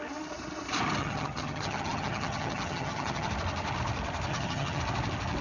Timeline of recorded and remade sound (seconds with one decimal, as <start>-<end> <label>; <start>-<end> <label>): 0.0-1.0 recorded; 1.0-3.3 remade; 3.3-4.3 recorded; 4.3-4.8 remade; 4.8-5.4 recorded